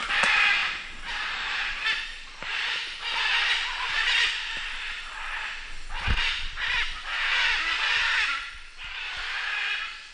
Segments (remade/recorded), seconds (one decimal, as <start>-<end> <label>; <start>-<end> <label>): 0.0-10.1 recorded